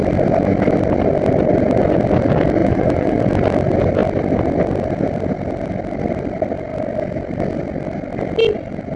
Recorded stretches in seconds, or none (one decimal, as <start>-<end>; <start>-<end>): 0.0-2.6; 3.2-9.0